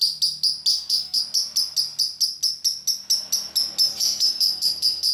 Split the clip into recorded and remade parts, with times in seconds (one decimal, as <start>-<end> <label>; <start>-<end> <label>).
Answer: 0.0-0.7 recorded; 0.7-1.2 remade; 1.2-4.0 recorded; 4.0-5.1 remade